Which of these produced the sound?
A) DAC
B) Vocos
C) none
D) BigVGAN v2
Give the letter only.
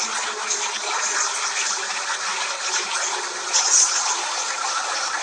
C